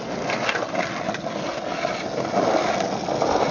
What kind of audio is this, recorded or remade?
recorded